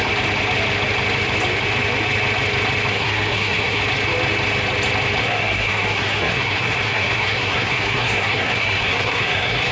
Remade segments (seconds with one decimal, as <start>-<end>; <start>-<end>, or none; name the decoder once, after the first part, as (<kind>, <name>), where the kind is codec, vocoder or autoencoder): 2.9-3.8 (codec, SNAC); 5.2-9.7